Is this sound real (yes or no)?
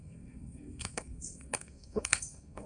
no